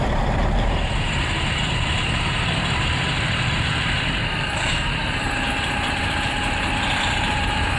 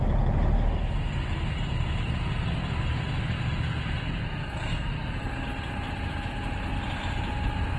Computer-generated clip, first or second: first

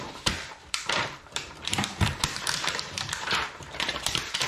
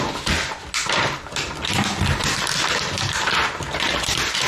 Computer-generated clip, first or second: first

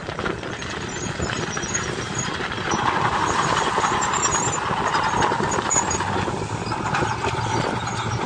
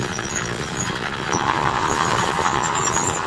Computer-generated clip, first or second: second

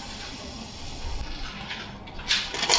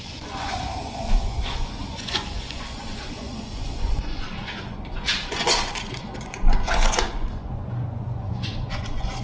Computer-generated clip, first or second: second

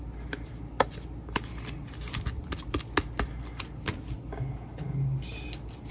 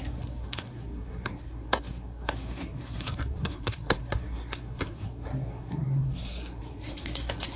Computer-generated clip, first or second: second